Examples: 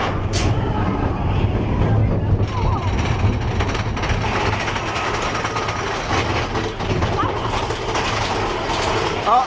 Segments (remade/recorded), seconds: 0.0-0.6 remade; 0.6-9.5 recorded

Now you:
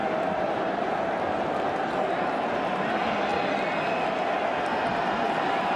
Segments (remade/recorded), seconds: 0.0-4.9 recorded; 4.9-5.8 remade

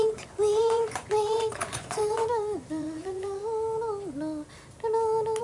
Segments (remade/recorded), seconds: 0.0-3.4 remade; 3.4-5.4 recorded

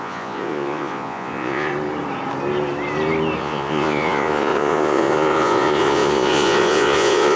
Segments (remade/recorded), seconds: 0.0-1.7 remade; 1.7-3.4 recorded; 3.4-7.4 remade